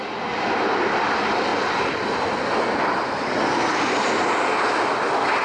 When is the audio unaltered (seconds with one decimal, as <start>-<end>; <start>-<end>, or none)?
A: 0.0-5.4